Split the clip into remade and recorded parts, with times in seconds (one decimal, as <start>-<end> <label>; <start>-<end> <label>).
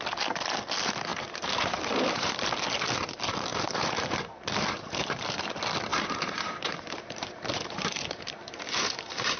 0.0-1.1 recorded; 1.1-2.3 remade; 2.3-3.5 recorded; 3.5-5.5 remade; 5.5-5.9 recorded; 5.9-9.4 remade